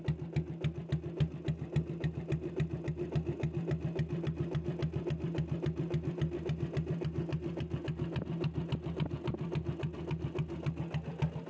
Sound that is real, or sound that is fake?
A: real